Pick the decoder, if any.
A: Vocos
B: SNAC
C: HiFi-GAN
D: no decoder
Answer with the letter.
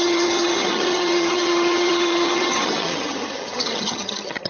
C